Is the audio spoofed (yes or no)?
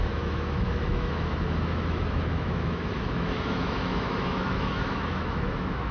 yes